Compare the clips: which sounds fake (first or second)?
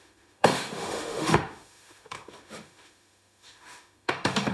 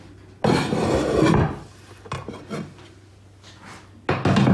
first